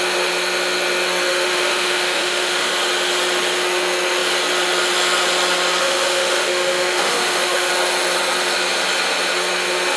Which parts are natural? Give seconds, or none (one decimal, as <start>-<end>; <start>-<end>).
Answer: 0.0-1.3; 2.7-5.8; 7.7-10.0